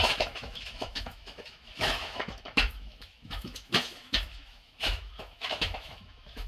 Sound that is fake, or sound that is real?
fake